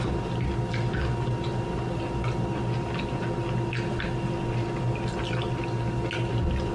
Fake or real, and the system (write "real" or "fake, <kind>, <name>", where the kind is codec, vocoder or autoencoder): real